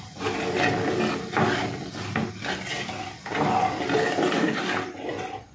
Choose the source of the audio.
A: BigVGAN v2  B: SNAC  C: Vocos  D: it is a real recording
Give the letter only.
D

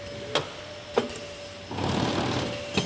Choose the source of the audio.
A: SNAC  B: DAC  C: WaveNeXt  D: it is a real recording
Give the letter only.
D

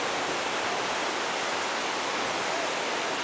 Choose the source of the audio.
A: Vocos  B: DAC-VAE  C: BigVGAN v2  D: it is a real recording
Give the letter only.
D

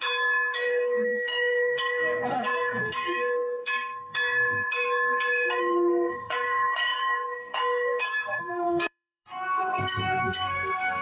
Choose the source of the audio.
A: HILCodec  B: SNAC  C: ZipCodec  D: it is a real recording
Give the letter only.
B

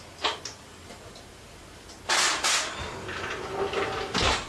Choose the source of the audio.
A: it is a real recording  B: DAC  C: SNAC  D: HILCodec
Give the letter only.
A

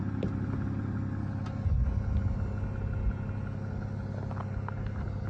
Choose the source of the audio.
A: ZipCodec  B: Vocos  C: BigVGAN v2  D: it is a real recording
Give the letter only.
D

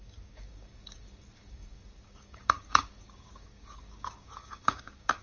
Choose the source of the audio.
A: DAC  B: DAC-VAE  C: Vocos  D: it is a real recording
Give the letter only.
A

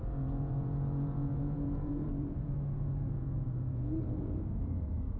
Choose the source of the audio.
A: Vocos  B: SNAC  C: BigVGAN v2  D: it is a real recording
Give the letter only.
A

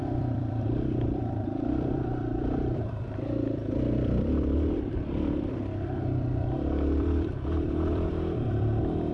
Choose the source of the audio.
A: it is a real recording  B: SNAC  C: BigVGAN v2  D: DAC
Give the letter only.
C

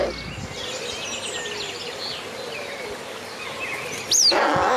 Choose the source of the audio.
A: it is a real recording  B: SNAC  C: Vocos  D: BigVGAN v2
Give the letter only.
A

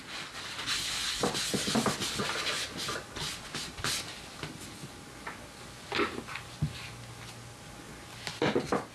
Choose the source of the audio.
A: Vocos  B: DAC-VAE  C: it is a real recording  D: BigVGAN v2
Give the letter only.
C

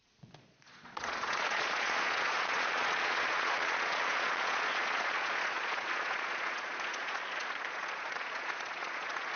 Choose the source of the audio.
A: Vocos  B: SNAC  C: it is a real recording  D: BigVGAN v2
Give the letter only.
A